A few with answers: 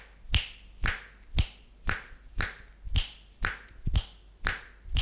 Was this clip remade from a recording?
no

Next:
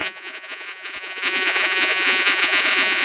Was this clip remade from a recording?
yes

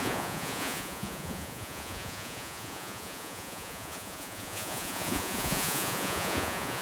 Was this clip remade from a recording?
yes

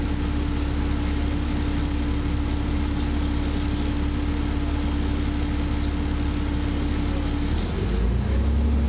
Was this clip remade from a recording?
no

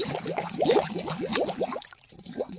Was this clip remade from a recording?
yes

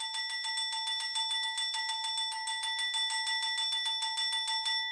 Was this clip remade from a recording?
no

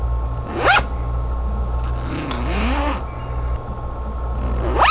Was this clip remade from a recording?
no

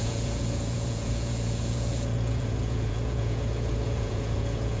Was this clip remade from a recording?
yes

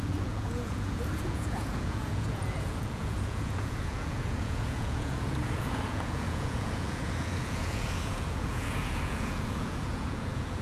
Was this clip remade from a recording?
yes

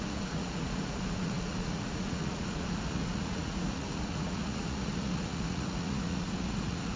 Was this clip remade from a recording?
yes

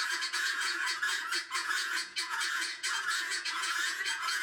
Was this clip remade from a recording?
yes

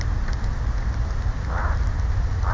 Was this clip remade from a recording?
no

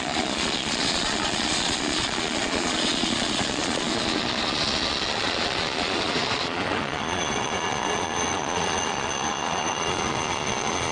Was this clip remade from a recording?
yes